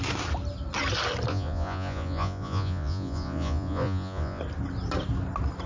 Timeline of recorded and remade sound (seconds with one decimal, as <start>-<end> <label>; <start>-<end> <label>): 0.0-1.3 recorded; 1.3-4.4 remade; 4.4-5.7 recorded